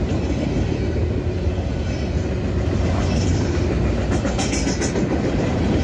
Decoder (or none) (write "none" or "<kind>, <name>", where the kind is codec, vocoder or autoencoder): none